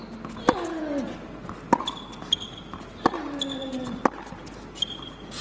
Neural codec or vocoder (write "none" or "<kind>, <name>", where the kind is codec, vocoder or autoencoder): none